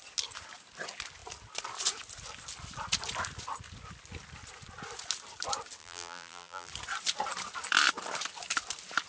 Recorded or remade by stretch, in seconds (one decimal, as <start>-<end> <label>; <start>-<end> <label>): 0.0-5.8 recorded; 5.8-6.7 remade; 6.7-9.1 recorded